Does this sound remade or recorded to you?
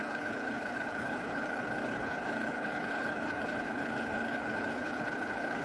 remade